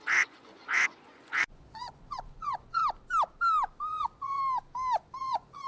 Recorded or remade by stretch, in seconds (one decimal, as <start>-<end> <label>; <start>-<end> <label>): 0.0-2.8 remade; 2.8-3.9 recorded; 3.9-4.4 remade; 4.4-5.2 recorded; 5.2-5.7 remade